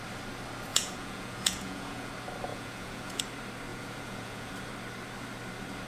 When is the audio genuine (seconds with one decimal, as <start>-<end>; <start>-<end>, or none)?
0.0-0.7; 2.1-2.5; 3.2-3.7; 4.5-5.9